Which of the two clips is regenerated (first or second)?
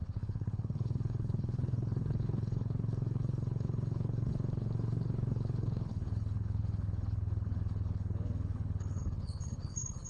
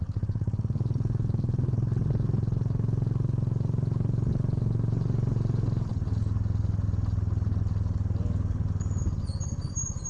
first